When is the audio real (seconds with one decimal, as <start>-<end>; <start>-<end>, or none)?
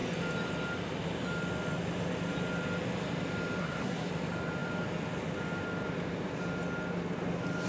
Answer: 0.0-3.6; 4.1-7.7